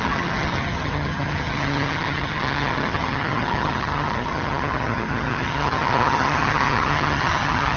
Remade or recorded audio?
remade